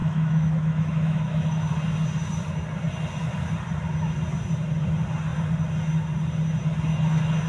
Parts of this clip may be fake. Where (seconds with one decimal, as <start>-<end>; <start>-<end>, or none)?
0.0-1.7